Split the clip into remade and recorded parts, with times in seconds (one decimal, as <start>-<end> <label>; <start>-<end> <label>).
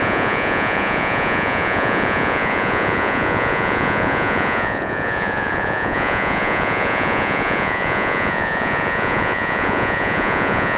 0.0-10.8 remade